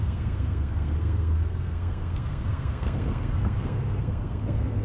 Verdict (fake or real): fake